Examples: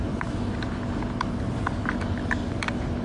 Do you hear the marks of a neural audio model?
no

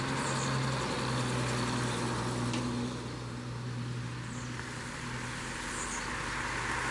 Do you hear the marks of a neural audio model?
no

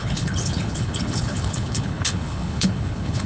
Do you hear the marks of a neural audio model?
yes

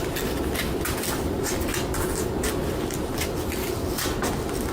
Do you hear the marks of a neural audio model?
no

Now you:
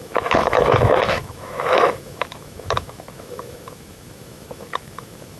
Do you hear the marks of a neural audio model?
yes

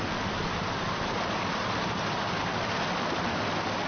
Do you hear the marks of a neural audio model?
no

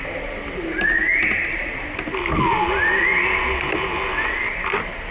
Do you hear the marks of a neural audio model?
no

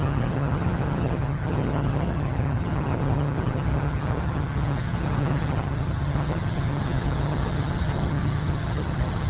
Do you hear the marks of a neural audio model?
yes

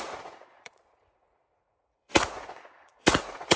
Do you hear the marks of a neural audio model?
yes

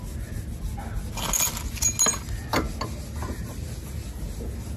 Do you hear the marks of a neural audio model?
no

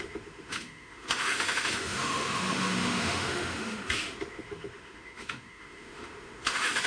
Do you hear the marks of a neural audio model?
yes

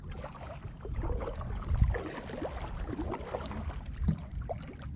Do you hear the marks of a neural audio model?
no